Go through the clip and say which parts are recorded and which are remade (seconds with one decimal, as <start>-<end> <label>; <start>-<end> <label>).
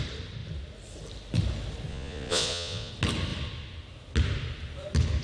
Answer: 0.0-1.9 recorded; 1.9-2.9 remade; 2.9-5.2 recorded